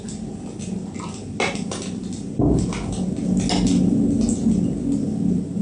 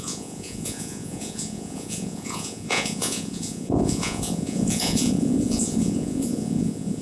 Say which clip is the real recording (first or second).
first